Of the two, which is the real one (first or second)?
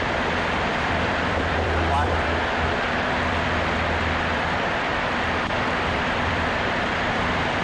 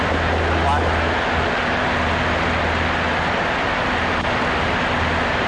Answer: second